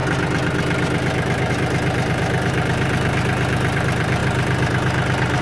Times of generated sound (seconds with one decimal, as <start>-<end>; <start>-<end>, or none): 1.5-5.4

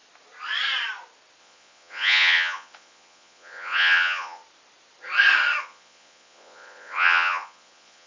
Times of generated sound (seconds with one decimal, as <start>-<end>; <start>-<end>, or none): 1.4-4.4; 5.6-8.1

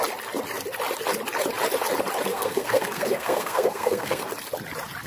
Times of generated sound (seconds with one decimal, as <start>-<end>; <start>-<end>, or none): 2.3-4.3

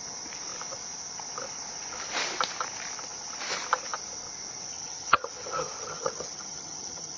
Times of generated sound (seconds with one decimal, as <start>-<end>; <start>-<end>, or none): 4.7-7.2

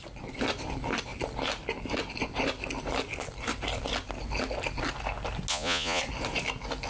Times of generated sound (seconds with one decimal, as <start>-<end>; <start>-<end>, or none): 5.5-6.0

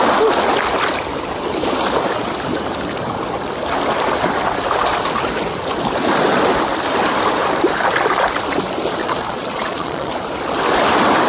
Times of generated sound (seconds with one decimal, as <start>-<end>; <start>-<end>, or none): 9.0-10.1